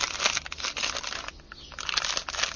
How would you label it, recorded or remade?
recorded